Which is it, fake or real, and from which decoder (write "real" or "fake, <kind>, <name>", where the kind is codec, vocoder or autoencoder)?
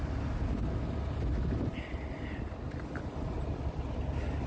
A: real